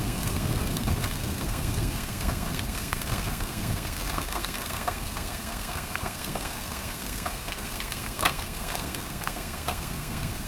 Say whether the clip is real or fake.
fake